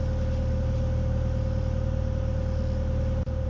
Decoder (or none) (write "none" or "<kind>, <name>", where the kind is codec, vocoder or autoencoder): none